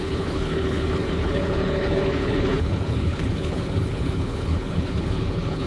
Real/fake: fake